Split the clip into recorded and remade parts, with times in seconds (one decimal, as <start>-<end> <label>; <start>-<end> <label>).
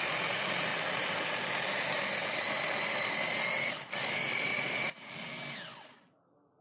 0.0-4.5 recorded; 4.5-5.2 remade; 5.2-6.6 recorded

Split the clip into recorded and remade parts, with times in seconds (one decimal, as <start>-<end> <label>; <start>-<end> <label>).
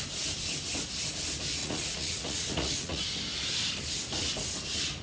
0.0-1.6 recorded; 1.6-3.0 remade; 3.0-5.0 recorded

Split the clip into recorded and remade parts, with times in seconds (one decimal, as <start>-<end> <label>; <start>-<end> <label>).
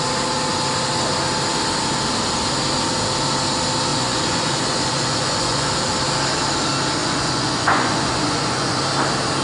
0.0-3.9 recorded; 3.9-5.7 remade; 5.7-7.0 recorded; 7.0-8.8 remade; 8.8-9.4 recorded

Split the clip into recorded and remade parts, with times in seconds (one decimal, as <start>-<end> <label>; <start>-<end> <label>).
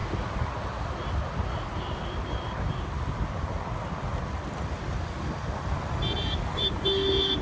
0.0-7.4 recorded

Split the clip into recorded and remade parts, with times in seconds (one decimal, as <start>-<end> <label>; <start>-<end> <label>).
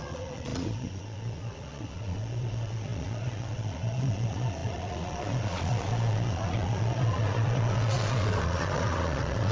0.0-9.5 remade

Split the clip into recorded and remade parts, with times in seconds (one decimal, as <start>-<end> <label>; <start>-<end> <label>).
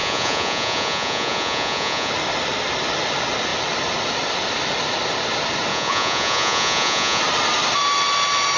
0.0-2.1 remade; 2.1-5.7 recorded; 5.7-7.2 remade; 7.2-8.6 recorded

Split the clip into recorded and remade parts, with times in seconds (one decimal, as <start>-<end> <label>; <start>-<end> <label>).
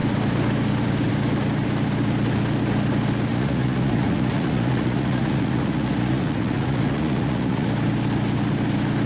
0.0-3.3 recorded; 3.3-7.7 remade; 7.7-9.1 recorded